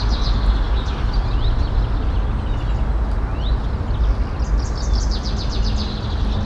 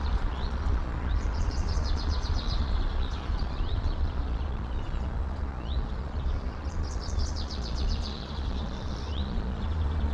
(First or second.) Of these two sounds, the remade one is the second